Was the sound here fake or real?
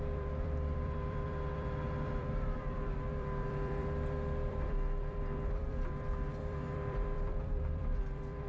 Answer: fake